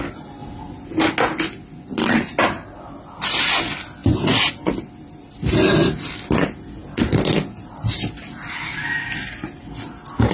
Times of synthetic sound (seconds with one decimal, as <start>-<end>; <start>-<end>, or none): none